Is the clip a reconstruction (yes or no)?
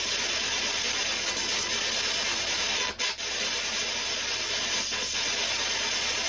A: no